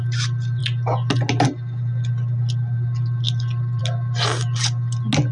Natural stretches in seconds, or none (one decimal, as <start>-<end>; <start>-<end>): 0.0-5.3